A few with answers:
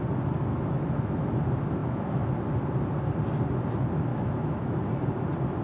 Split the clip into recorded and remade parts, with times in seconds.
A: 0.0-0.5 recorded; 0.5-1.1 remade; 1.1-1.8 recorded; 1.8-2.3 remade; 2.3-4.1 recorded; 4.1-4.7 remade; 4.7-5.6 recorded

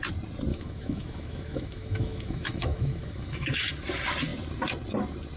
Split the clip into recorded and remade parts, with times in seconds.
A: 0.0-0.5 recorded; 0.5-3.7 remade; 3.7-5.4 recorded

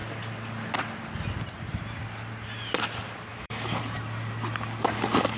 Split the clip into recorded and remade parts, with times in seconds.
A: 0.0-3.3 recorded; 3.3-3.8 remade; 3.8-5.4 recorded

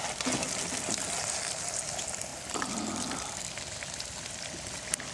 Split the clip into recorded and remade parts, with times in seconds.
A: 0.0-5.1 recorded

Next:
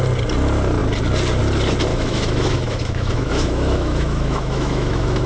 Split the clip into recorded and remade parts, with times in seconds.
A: 0.0-1.9 recorded; 1.9-5.3 remade